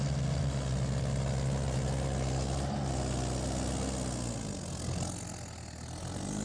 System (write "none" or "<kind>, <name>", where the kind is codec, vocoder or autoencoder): none